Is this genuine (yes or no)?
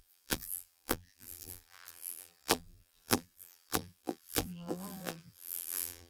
no